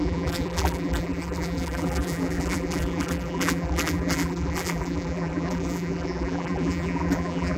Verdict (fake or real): fake